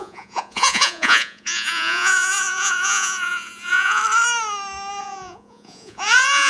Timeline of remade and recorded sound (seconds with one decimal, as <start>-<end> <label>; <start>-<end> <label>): 0.0-4.0 remade; 4.0-5.0 recorded; 5.0-6.5 remade